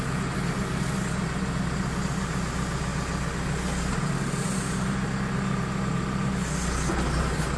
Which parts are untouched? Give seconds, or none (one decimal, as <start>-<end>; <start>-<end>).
0.0-7.6